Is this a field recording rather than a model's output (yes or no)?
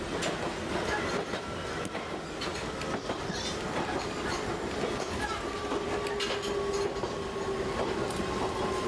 yes